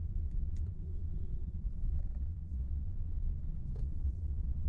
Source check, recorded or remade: remade